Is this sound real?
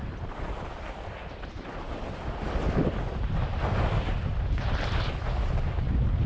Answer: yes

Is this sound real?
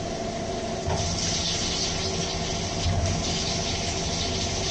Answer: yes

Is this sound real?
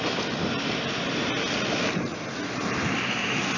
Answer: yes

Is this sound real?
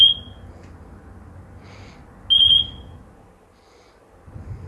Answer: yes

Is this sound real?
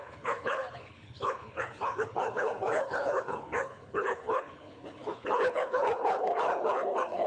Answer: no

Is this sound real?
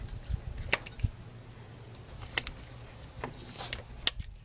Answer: yes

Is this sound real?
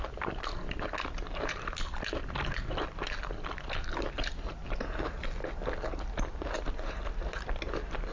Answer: yes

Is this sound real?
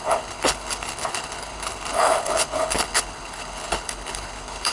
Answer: no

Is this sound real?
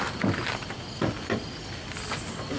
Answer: yes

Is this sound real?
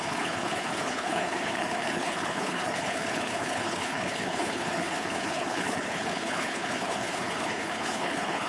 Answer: no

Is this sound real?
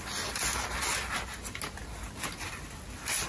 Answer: yes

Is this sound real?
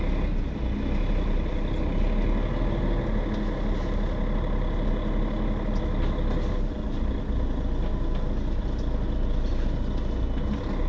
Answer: yes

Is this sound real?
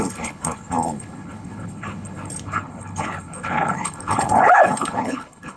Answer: no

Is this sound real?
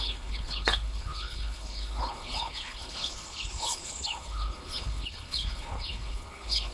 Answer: no